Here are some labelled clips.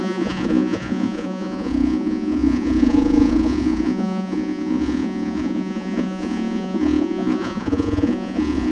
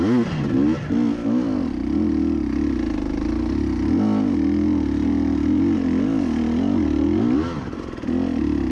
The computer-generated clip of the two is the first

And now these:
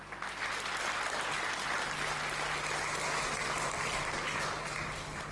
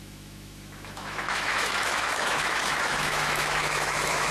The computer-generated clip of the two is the second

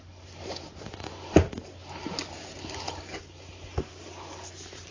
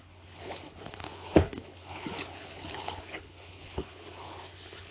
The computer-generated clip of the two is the second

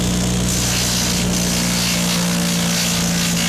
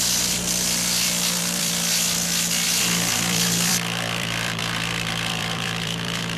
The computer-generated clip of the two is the second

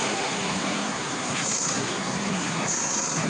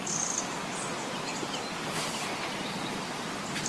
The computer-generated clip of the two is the first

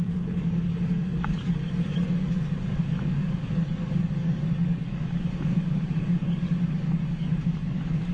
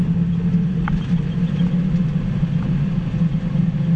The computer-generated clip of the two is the first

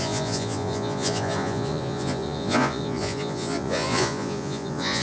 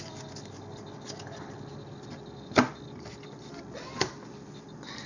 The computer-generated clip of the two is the first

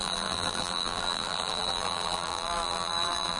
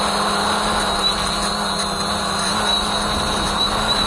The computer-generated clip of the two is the first